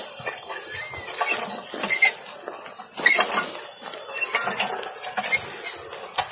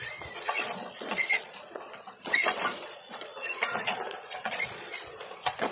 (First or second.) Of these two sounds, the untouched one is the first